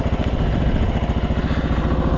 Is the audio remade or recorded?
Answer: recorded